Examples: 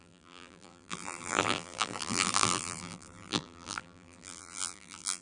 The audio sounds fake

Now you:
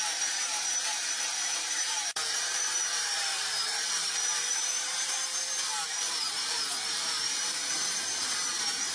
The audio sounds fake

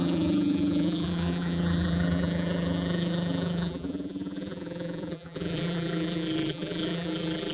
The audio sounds fake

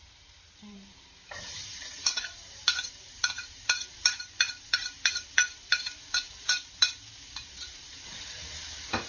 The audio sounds fake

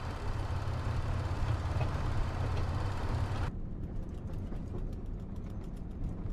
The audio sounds fake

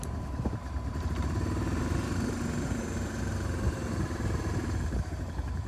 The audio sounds fake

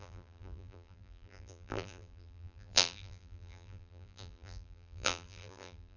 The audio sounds fake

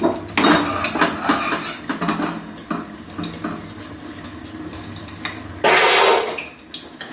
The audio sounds real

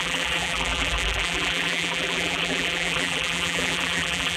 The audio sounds fake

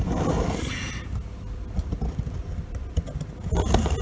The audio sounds real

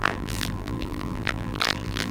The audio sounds fake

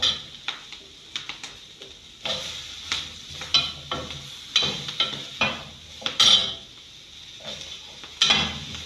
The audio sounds real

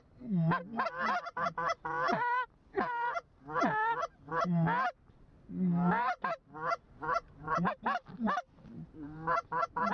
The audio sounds real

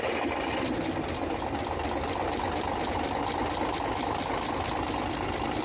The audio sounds real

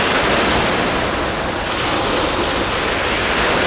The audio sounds real